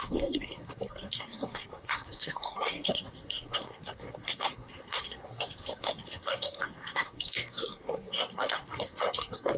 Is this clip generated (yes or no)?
yes